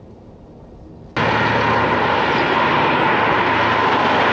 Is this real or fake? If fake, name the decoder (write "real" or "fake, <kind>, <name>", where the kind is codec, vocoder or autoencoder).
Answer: real